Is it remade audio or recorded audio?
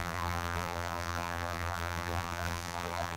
remade